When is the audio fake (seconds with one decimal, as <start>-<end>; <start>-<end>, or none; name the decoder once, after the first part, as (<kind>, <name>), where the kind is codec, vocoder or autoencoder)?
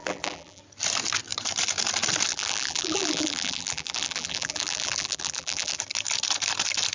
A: 0.0-0.6 (vocoder, BigVGAN v2); 2.3-5.8